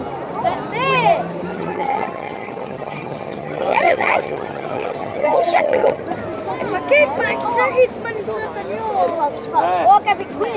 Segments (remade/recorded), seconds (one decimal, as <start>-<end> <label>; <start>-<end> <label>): 0.0-1.5 recorded; 1.5-6.0 remade; 6.0-10.6 recorded